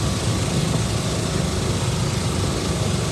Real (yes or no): yes